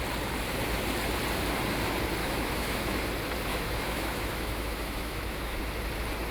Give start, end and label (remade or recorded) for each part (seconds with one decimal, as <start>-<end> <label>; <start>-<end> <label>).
0.0-2.2 recorded; 2.2-3.0 remade; 3.0-3.5 recorded; 3.5-5.6 remade; 5.6-6.3 recorded